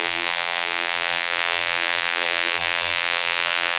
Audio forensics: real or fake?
fake